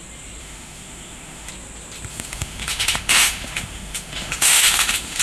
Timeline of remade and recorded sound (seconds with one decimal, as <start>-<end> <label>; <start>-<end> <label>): 0.0-0.4 recorded; 0.4-1.5 remade; 1.5-2.1 recorded; 2.1-5.2 remade